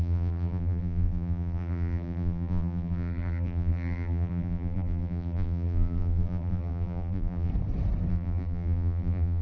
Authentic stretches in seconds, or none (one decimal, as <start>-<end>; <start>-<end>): 7.5-8.1

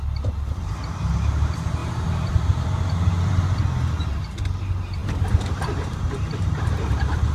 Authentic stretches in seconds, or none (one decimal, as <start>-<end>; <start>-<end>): 3.6-4.6

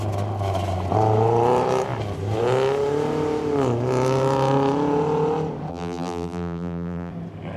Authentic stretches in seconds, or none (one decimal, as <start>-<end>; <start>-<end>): 0.0-5.7; 7.1-7.6

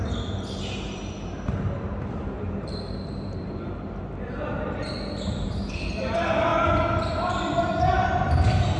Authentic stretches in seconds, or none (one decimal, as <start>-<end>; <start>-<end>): 6.5-7.9

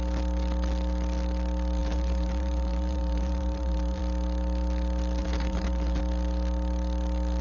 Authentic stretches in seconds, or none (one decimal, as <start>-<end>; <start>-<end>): 0.0-1.8; 4.0-5.2; 6.0-7.4

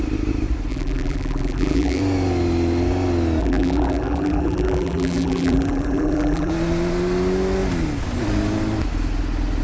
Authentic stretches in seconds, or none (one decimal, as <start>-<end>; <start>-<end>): 0.0-0.7; 2.0-3.4; 6.5-9.6

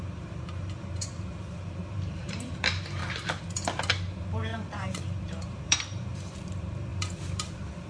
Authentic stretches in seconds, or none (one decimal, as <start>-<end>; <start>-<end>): 3.0-4.1